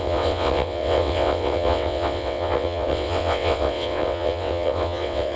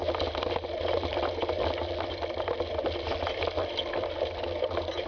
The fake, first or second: first